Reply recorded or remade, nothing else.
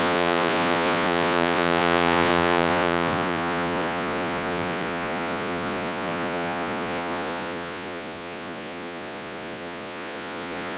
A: remade